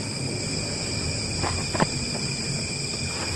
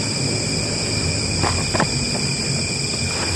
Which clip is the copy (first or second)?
first